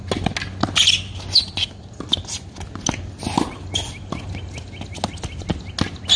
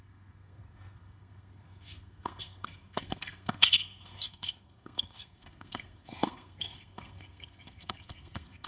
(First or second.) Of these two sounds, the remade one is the second